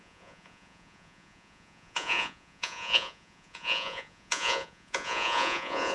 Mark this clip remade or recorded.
remade